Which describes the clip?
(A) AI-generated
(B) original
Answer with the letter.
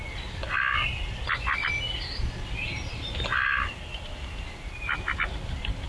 B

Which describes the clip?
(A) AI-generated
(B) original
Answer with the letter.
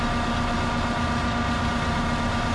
B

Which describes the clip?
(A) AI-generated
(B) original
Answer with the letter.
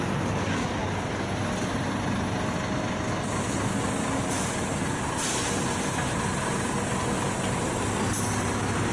B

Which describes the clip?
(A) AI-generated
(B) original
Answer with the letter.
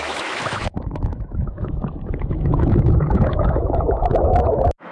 A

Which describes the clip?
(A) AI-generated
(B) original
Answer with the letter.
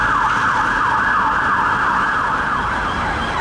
B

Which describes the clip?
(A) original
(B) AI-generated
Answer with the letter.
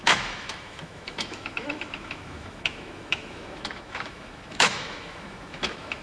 B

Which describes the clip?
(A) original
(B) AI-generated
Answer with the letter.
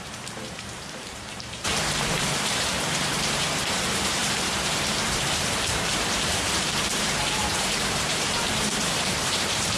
B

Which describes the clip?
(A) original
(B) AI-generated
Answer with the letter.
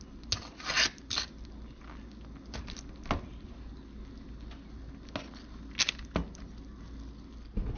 A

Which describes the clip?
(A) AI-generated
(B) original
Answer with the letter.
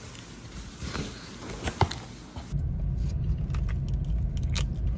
B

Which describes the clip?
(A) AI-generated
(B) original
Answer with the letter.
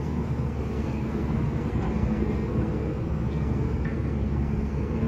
A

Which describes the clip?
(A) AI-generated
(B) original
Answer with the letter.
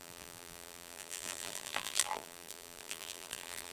A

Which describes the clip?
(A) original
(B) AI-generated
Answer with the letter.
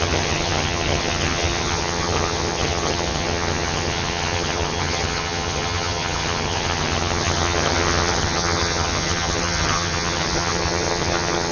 B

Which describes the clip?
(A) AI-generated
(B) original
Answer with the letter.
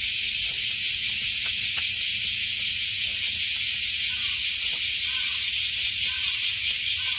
A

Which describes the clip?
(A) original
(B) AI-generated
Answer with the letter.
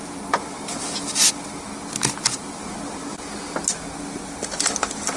A